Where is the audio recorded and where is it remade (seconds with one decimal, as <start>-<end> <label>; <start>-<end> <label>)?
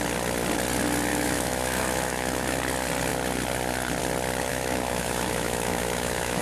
0.0-1.1 recorded; 1.1-2.6 remade; 2.6-4.5 recorded; 4.5-6.4 remade